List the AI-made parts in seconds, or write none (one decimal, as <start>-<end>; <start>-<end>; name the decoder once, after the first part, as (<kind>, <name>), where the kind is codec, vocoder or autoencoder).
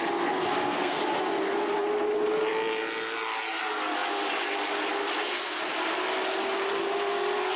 0.5-1.0 (codec, SNAC)